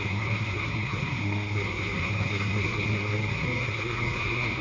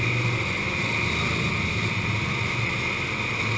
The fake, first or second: first